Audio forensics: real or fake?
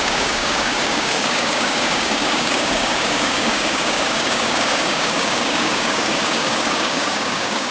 fake